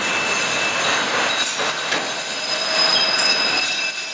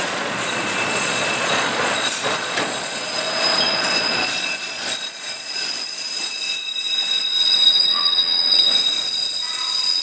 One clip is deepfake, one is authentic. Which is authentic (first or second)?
first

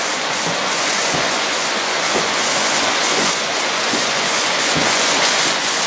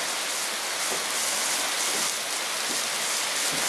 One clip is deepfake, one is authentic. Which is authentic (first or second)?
second